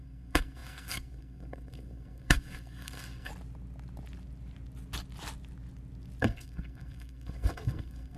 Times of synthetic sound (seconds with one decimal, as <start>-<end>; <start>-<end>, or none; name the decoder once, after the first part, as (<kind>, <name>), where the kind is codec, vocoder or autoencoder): 0.0-3.3 (codec, SNAC); 6.2-8.2